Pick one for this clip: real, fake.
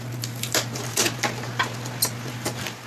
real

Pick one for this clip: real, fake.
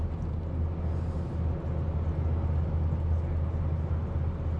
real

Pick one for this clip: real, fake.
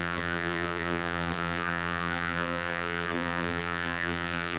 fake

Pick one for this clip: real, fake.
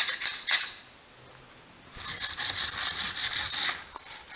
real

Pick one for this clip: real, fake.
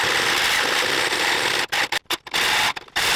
real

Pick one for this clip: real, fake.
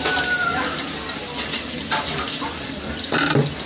real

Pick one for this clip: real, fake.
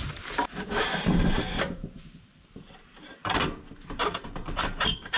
fake